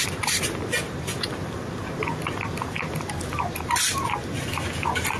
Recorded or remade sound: recorded